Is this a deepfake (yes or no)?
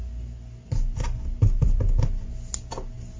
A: no